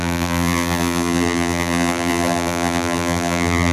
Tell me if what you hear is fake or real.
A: fake